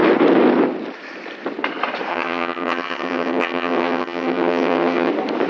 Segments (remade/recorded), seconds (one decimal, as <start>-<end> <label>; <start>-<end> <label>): 0.0-2.1 recorded; 2.1-5.1 remade; 5.1-5.5 recorded